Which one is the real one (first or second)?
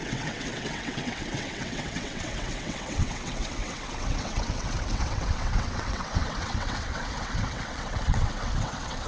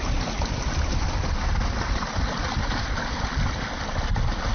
second